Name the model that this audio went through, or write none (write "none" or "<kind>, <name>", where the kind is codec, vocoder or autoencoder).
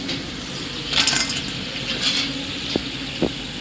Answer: none